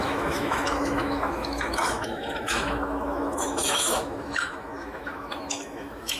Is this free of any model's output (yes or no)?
no